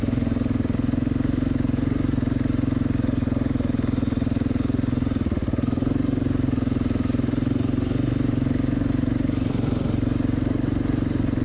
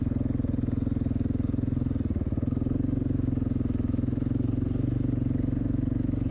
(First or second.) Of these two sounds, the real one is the second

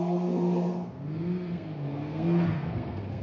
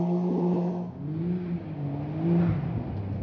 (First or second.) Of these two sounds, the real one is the second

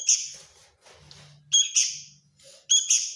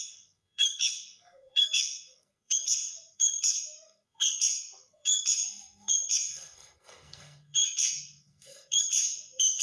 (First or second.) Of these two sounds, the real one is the first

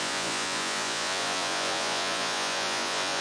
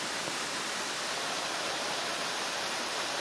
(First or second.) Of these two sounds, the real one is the second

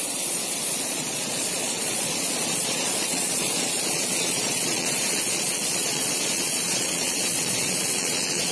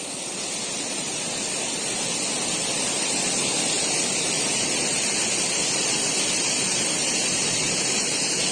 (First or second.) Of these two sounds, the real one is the second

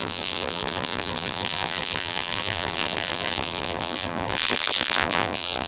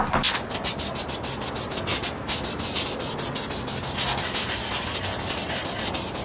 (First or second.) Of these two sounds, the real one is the second